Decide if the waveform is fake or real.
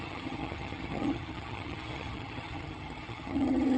fake